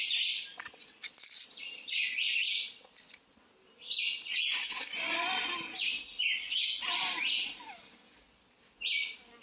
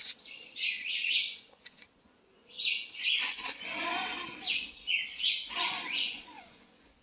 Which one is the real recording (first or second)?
first